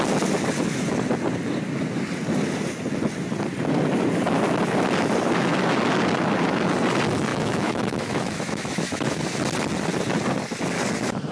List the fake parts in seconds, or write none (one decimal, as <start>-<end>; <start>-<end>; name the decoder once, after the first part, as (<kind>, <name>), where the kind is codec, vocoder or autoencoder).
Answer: 7.3-9.2 (autoencoder, DAC-VAE)